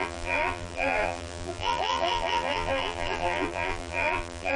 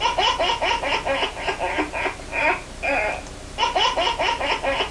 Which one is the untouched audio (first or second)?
second